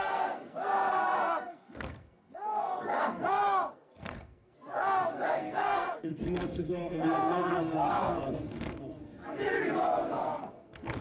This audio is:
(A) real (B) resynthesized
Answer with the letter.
B